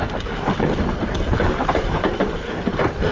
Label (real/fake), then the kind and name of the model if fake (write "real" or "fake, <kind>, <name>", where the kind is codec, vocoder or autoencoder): real